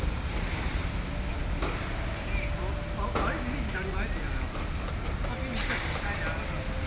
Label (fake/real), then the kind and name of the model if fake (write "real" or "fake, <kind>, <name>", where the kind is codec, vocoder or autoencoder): real